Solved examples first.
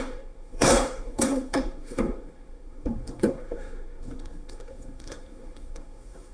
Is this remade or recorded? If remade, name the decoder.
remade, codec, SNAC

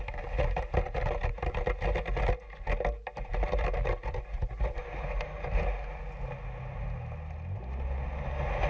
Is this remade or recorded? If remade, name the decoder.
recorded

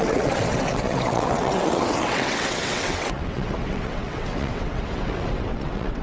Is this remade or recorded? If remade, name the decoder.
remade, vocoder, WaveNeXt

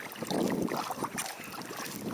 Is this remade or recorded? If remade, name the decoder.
recorded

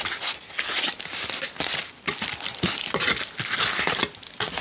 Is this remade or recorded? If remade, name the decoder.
recorded